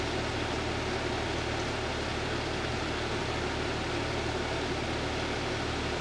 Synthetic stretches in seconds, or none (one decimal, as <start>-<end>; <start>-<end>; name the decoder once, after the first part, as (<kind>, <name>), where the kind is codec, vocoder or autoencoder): none